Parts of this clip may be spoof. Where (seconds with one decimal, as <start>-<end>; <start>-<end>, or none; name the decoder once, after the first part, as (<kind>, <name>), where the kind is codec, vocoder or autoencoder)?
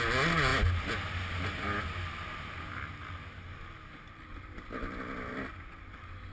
none